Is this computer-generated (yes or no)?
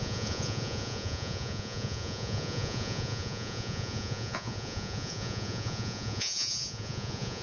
yes